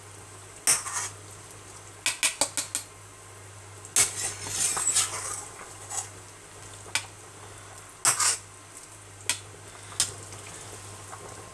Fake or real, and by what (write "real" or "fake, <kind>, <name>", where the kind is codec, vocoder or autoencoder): real